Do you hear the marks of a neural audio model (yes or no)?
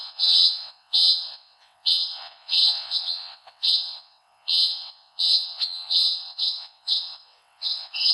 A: yes